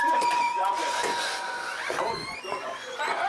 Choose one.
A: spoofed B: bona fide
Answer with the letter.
A